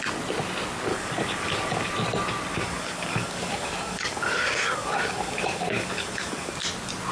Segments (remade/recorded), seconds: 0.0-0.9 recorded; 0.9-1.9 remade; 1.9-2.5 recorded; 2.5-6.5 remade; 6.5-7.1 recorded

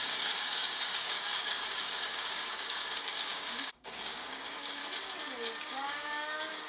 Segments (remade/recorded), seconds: 0.0-4.8 remade; 4.8-5.6 recorded; 5.6-6.7 remade